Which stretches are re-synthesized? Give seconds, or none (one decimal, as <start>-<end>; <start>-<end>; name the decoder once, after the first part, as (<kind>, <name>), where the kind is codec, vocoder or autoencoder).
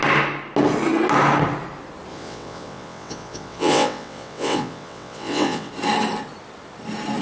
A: 2.1-5.7 (vocoder, WaveNeXt)